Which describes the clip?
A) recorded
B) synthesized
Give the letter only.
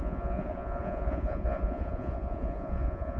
B